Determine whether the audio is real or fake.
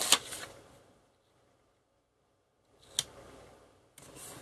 real